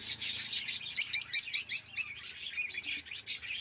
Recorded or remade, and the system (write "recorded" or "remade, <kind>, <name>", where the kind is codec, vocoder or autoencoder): recorded